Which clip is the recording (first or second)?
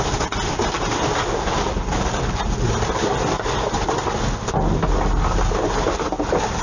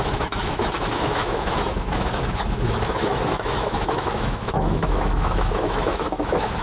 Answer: first